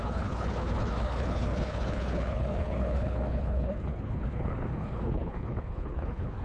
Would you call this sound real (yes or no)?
no